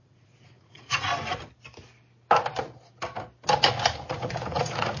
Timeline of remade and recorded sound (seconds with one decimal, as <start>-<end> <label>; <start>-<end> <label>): 0.0-1.1 remade; 1.1-4.1 recorded; 4.1-5.0 remade